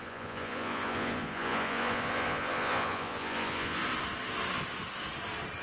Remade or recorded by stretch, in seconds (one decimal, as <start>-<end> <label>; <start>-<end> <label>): 0.0-3.8 remade; 3.8-5.6 recorded